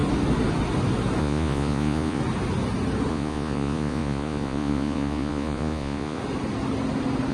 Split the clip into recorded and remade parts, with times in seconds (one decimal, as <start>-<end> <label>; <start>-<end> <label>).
0.0-1.2 recorded; 1.2-2.2 remade; 2.2-3.1 recorded; 3.1-6.2 remade; 6.2-7.3 recorded